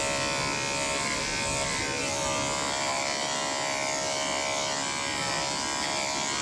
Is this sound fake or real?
real